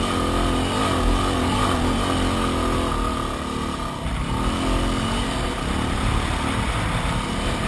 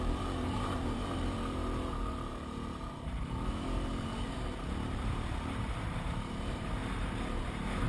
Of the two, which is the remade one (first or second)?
second